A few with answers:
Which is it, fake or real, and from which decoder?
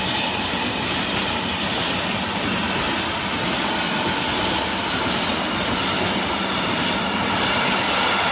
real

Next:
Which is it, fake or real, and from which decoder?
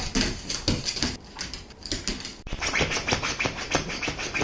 real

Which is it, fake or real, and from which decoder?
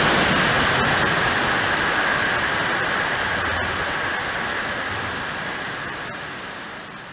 real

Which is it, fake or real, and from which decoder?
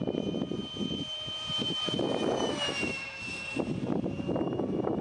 fake, vocoder, BigVGAN v2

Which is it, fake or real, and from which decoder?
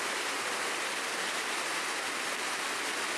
real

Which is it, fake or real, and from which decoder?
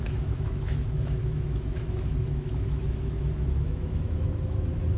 fake, autoencoder, DAC-VAE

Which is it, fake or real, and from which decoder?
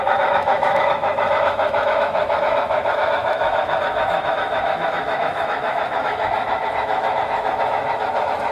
fake, autoencoder, DAC-VAE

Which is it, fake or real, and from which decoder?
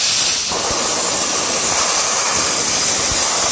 real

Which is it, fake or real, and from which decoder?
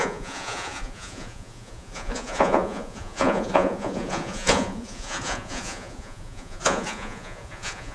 fake, vocoder, Vocos